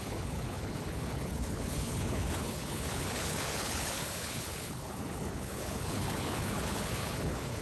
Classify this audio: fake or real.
fake